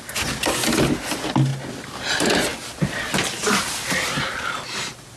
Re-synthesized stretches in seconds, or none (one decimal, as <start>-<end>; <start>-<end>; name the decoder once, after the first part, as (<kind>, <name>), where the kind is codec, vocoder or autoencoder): none